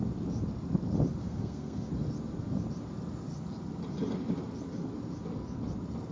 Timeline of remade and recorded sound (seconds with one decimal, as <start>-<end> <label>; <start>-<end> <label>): 0.0-1.2 recorded; 1.2-1.9 remade; 1.9-6.1 recorded